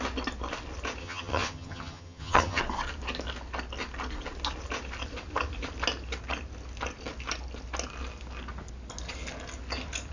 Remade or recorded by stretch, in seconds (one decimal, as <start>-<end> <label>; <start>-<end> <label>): 0.0-1.0 recorded; 1.0-2.6 remade; 2.6-10.1 recorded